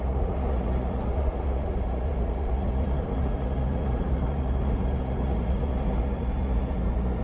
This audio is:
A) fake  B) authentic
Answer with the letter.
A